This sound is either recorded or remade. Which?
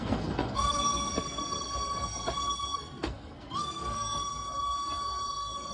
remade